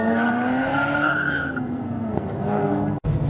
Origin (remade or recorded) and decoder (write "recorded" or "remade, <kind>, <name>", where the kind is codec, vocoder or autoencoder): remade, codec, SNAC